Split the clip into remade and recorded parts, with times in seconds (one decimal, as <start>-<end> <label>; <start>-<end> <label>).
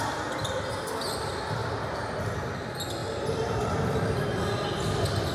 0.0-1.6 recorded; 1.6-2.2 remade; 2.2-3.0 recorded; 3.0-4.5 remade; 4.5-5.3 recorded